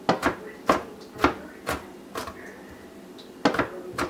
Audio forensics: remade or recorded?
recorded